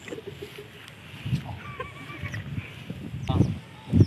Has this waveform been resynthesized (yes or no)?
no